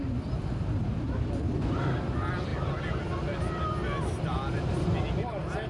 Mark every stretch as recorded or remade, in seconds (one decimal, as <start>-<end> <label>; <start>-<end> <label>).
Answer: 0.0-5.7 recorded